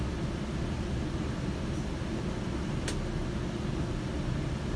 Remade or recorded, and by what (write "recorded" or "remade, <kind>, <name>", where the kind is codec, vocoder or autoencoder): recorded